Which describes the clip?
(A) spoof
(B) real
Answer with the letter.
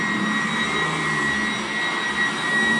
B